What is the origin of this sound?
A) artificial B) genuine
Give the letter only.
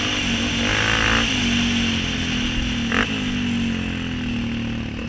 B